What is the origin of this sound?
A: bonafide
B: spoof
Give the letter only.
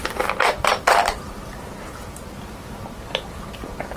A